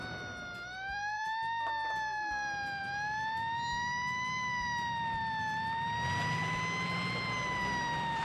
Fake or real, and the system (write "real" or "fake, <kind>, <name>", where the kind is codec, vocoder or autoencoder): fake, vocoder, BigVGAN v2